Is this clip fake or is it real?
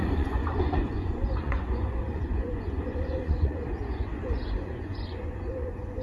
fake